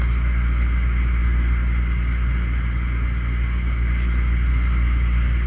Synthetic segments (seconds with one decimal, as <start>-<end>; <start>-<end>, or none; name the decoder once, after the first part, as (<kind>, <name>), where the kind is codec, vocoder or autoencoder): none